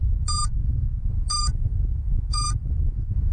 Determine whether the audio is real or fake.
real